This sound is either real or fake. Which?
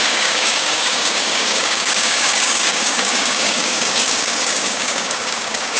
fake